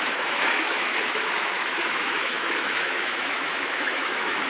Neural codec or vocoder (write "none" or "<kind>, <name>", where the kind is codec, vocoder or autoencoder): autoencoder, DAC-VAE